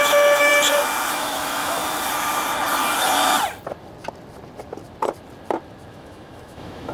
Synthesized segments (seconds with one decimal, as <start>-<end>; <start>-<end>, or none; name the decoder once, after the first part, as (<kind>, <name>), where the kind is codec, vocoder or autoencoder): 0.0-0.5 (autoencoder, DAC-VAE); 1.1-1.8; 5.9-6.9